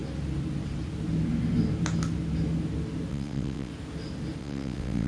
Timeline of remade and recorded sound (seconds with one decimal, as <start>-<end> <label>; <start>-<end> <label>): 0.0-3.1 recorded; 3.1-3.7 remade; 3.7-4.4 recorded; 4.4-5.1 remade